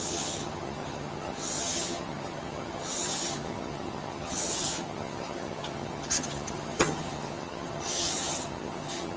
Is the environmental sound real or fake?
fake